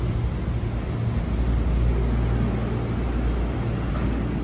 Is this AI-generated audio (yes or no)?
no